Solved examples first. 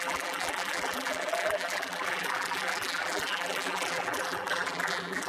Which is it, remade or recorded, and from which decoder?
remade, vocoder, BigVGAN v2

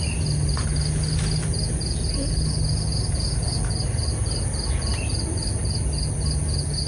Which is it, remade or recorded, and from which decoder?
recorded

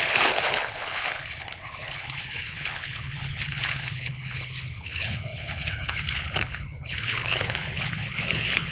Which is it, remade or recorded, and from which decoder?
remade, codec, HILCodec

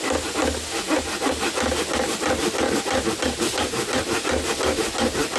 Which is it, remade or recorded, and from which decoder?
recorded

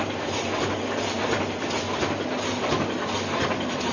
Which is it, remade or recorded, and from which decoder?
recorded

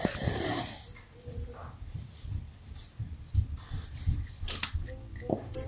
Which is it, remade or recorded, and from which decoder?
remade, vocoder, BigVGAN v2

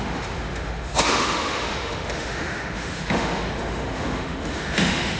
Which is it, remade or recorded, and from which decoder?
remade, autoencoder, DAC-VAE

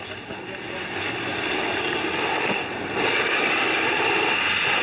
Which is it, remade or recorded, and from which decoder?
recorded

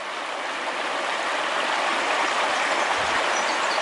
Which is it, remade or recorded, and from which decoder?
recorded